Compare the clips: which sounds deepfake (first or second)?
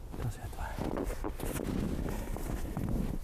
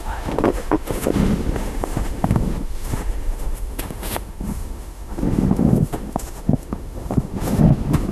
second